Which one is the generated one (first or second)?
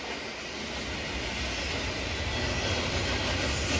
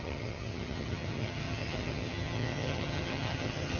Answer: second